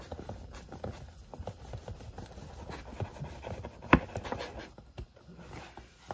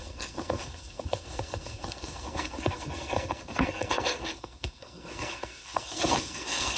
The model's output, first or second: second